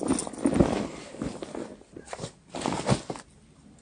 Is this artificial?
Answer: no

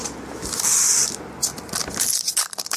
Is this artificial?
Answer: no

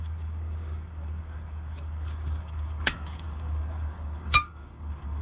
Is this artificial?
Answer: yes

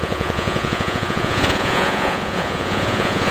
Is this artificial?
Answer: yes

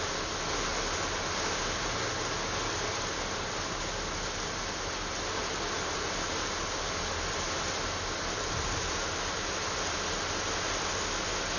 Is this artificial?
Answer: no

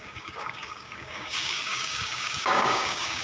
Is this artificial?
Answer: yes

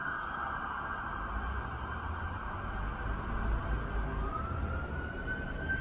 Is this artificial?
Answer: no